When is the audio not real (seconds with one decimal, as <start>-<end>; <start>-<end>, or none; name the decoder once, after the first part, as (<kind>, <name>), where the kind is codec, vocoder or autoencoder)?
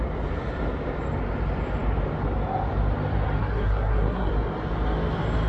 3.4-4.3 (codec, SNAC)